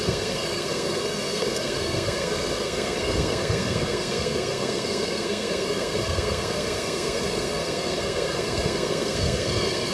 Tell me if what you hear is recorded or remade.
remade